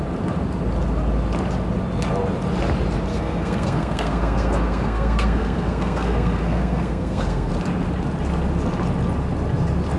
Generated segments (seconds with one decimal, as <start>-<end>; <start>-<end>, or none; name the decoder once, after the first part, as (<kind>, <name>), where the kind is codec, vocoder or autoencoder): 3.1-7.5 (codec, SNAC)